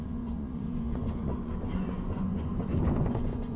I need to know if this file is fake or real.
fake